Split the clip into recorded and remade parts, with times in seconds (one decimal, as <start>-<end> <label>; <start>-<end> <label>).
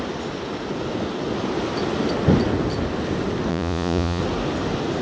0.0-3.5 recorded; 3.5-4.2 remade; 4.2-5.0 recorded